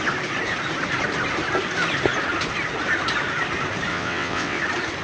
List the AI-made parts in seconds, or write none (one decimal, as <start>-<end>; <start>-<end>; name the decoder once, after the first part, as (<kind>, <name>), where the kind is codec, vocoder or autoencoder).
3.9-4.6 (vocoder, WaveNeXt)

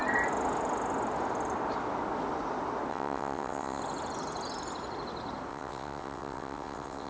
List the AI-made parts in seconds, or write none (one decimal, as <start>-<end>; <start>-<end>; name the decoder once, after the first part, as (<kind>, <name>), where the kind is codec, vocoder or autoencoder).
2.9-3.8 (vocoder, WaveNeXt); 5.5-7.1

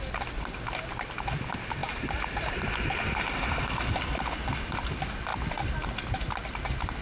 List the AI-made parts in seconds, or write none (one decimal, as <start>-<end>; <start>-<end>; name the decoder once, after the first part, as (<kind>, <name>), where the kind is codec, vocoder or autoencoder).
none

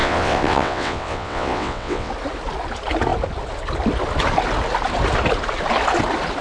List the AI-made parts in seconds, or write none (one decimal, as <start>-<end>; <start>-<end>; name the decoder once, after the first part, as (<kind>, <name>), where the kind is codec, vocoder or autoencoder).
0.0-2.1 (vocoder, WaveNeXt)